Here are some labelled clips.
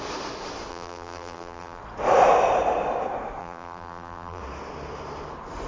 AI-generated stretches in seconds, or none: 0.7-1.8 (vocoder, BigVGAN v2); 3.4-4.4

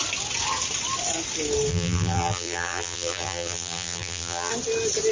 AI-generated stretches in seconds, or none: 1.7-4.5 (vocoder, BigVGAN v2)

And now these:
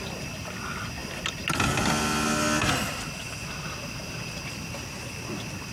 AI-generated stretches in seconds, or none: none